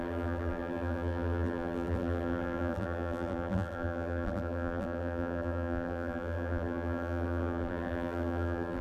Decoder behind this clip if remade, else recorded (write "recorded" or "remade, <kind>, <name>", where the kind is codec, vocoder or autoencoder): remade, vocoder, BigVGAN v2